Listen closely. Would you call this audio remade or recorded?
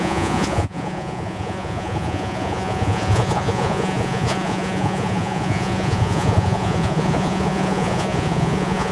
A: remade